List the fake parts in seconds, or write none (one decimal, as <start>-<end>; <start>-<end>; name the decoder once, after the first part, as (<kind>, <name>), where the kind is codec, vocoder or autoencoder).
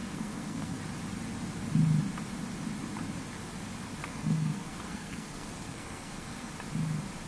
0.0-0.8 (codec, SNAC); 4.0-6.5